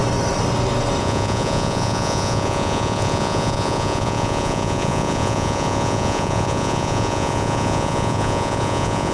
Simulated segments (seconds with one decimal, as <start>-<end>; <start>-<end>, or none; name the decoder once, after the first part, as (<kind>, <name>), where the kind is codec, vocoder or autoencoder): 1.0-9.1 (vocoder, Vocos)